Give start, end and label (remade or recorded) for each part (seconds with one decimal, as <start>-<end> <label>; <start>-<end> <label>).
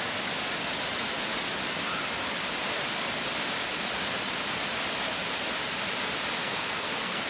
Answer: 0.0-6.4 recorded; 6.4-7.3 remade